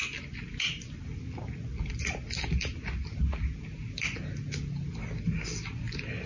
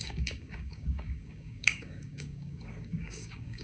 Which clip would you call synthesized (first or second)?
second